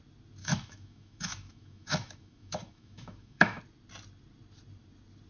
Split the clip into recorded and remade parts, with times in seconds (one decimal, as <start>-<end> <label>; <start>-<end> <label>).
0.0-0.4 recorded; 0.4-3.6 remade; 3.6-5.3 recorded